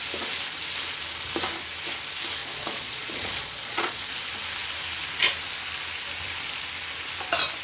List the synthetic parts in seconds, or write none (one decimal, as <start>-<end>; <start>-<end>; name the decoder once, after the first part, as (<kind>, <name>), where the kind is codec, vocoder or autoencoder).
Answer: 2.4-4.1 (vocoder, Vocos)